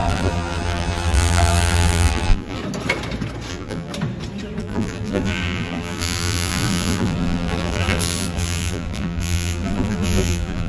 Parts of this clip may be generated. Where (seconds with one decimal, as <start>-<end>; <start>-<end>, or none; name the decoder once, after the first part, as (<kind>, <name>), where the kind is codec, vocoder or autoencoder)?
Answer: 0.0-2.6 (vocoder, BigVGAN v2); 3.5-3.9; 4.6-10.7